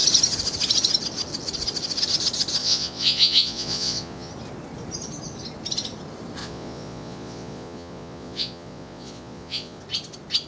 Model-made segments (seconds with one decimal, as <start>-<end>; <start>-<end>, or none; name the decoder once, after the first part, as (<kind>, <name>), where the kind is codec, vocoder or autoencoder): 2.6-4.3 (vocoder, Vocos); 6.4-9.8